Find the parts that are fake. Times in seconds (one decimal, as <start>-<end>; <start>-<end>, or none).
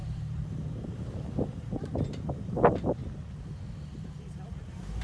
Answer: 0.0-3.0; 4.5-5.0